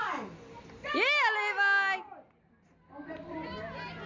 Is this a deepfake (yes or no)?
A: no